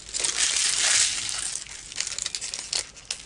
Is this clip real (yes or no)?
yes